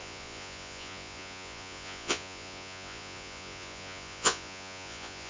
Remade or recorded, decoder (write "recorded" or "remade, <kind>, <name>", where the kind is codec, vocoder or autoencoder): remade, vocoder, Vocos